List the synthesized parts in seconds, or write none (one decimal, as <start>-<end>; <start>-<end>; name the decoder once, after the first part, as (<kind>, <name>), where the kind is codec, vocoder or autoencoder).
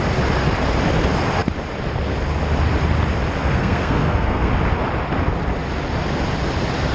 3.4-4.5 (codec, SNAC)